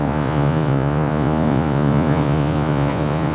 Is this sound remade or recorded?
remade